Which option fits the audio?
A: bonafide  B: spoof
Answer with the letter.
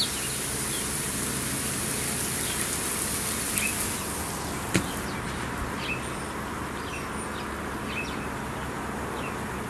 A